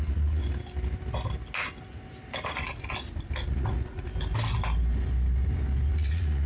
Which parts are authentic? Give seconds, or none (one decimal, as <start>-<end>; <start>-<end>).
0.4-3.5; 4.1-5.9